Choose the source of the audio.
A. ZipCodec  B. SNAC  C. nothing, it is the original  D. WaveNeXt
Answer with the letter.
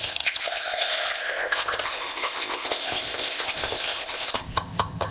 A